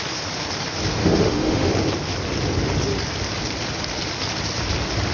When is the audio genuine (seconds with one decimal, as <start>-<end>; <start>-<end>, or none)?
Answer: 0.0-1.0; 1.7-5.1